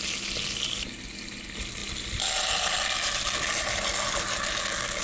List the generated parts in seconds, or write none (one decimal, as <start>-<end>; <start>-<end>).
none